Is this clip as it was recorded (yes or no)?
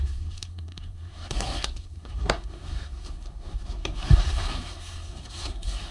no